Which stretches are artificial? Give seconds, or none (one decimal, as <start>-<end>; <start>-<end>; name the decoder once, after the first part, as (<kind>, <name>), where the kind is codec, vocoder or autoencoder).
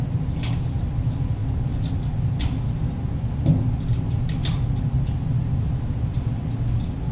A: none